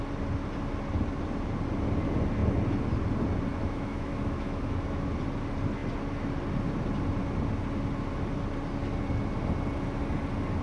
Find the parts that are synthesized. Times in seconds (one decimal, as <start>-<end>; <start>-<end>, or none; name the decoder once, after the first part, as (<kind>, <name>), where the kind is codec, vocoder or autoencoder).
3.5-5.1 (autoencoder, DAC-VAE)